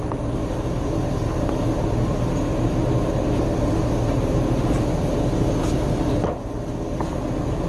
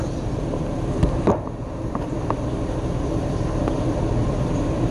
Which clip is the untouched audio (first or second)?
first